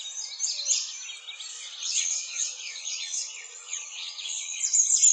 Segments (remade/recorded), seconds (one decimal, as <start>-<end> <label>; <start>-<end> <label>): 0.0-1.5 recorded; 1.5-4.6 remade; 4.6-5.1 recorded